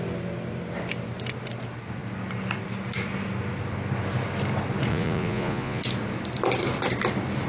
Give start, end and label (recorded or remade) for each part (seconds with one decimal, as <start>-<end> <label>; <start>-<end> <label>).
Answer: 0.0-4.9 recorded; 4.9-5.8 remade; 5.8-7.5 recorded